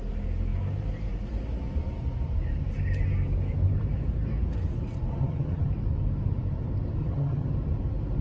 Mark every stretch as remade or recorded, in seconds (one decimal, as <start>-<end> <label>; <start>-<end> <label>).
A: 0.0-5.1 recorded; 5.1-5.7 remade; 5.7-7.0 recorded; 7.0-7.5 remade; 7.5-8.2 recorded